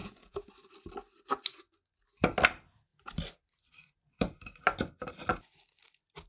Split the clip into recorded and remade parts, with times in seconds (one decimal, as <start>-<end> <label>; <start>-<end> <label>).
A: 0.0-0.5 remade; 0.5-6.3 recorded